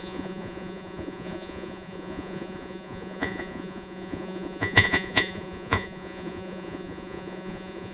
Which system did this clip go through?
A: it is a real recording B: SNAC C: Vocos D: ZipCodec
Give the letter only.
C